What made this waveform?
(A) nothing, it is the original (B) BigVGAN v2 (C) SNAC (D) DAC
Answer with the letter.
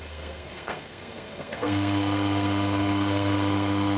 C